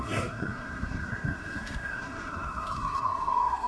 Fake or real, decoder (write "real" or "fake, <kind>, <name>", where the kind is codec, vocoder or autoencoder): fake, codec, SNAC